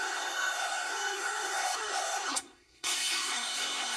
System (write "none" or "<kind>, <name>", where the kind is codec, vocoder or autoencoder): codec, SNAC